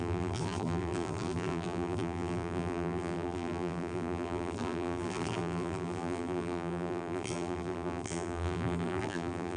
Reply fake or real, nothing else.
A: fake